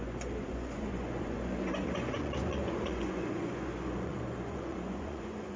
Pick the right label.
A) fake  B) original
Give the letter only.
A